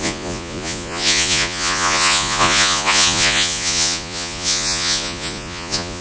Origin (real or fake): fake